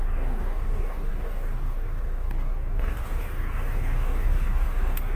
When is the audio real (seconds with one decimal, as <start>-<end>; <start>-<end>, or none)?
none